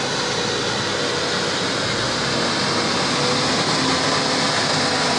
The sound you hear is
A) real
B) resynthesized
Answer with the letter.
A